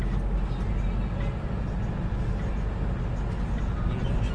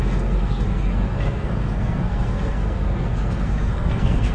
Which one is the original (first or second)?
first